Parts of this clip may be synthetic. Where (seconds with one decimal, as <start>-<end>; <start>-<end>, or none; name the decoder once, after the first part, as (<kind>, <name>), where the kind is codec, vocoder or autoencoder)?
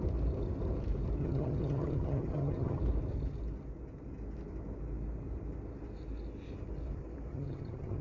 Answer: 1.2-2.8 (vocoder, HiFi-GAN); 7.3-8.0